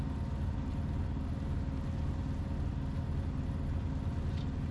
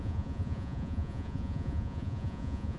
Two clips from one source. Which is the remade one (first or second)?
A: second